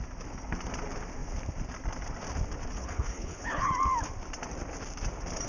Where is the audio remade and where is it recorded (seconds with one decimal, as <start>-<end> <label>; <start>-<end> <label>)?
0.0-2.8 recorded; 2.8-3.7 remade; 3.7-5.5 recorded

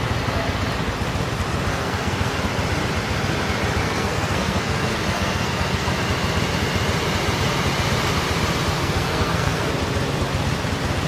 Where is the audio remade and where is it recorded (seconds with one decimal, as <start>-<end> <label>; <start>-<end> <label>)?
0.0-1.7 recorded; 1.7-2.4 remade; 2.4-3.8 recorded; 3.8-5.9 remade; 5.9-8.8 recorded; 8.8-9.7 remade; 9.7-11.1 recorded

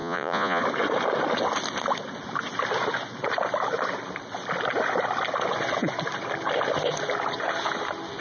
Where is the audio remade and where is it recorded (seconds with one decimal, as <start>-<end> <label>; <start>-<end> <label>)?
0.0-0.6 remade; 0.6-8.2 recorded

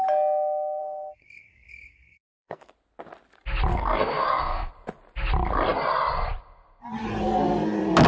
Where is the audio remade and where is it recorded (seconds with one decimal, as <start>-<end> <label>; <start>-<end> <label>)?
0.0-0.8 recorded; 0.8-2.7 remade; 2.7-3.7 recorded; 3.7-4.7 remade; 4.7-8.1 recorded

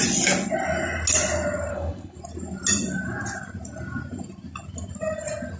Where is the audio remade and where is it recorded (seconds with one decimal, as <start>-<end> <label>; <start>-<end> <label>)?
0.0-1.7 recorded; 1.7-2.2 remade; 2.2-5.6 recorded